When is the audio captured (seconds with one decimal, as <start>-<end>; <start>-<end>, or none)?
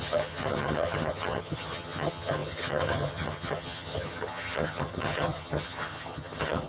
none